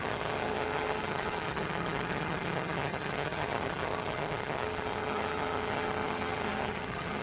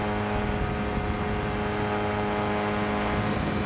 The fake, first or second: first